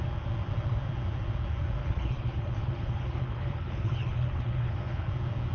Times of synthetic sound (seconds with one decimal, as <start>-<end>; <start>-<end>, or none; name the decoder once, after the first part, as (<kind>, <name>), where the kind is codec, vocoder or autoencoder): 1.8-5.1 (codec, HILCodec)